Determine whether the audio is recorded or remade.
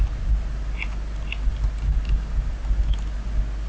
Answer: recorded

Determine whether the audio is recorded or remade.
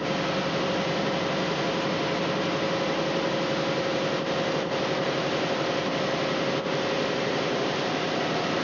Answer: recorded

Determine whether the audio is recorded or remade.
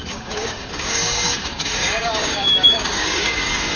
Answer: remade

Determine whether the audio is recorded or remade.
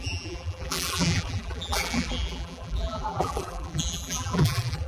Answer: remade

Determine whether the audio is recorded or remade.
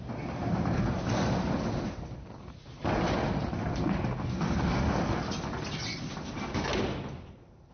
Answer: recorded